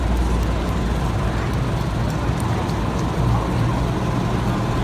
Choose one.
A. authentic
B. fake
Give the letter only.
A